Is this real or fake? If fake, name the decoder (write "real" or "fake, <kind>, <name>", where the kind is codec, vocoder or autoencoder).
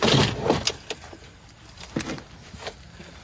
real